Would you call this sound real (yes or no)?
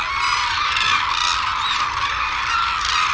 yes